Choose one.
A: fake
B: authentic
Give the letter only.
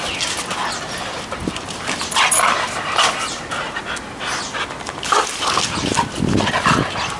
B